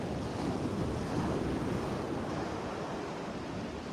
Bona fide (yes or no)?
yes